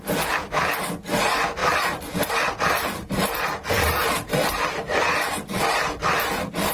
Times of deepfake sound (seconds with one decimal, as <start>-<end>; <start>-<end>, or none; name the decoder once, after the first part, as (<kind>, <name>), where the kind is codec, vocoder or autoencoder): 1.6-5.6 (vocoder, BigVGAN v2)